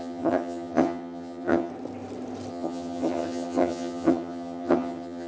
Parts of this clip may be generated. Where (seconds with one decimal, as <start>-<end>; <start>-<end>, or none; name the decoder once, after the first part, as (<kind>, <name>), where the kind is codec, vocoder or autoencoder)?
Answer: 0.0-1.7 (vocoder, HiFi-GAN); 2.5-5.3